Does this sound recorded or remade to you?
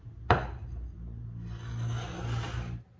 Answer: recorded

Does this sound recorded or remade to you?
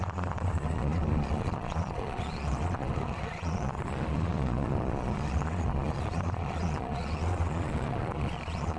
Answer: remade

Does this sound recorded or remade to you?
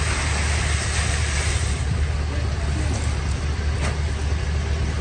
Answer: recorded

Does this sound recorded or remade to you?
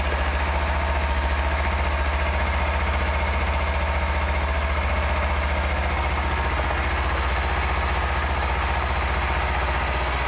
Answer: recorded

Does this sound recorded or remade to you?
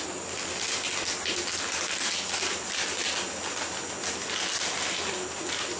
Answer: recorded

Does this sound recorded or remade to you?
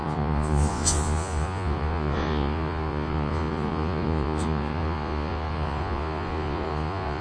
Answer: remade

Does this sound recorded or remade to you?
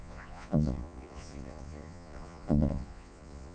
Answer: remade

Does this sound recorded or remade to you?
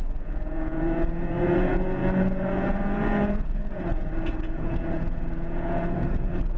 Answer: remade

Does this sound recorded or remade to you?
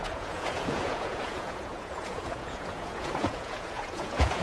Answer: remade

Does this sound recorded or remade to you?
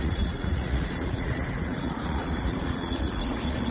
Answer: remade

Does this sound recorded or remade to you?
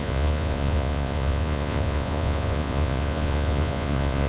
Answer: remade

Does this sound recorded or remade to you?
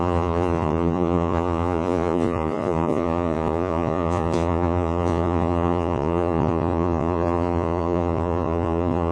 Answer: remade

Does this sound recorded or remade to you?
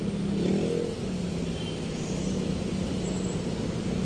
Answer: recorded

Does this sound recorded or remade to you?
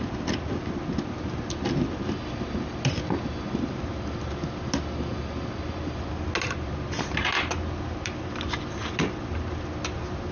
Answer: recorded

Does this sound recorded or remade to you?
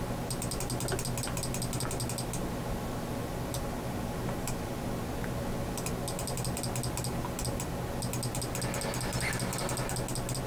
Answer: recorded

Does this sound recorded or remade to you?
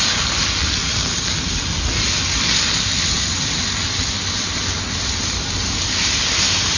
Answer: recorded